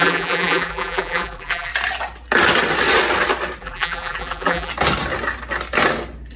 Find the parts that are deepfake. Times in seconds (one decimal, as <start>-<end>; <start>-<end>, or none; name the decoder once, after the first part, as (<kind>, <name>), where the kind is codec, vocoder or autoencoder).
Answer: 0.0-1.7 (vocoder, BigVGAN v2); 3.6-4.7